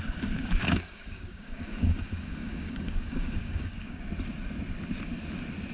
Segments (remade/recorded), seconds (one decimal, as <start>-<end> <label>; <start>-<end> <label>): 0.0-0.6 recorded; 0.6-4.0 remade; 4.0-5.7 recorded